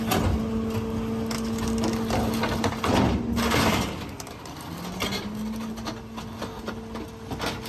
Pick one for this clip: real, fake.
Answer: real